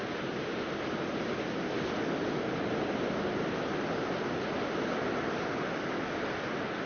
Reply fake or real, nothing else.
real